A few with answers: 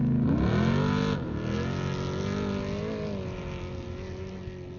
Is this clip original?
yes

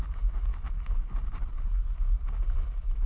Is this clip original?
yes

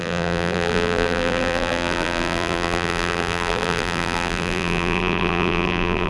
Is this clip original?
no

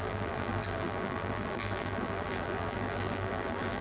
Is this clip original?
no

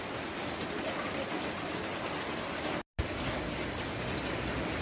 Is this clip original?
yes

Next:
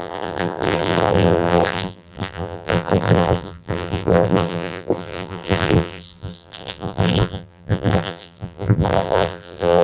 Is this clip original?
no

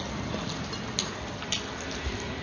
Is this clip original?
yes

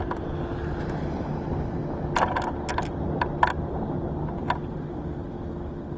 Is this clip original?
yes